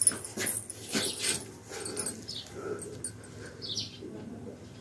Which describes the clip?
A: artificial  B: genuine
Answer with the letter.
B